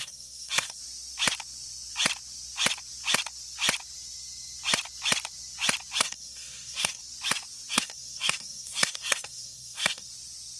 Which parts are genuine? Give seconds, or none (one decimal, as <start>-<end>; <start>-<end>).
0.8-6.0; 7.0-7.7; 10.1-10.6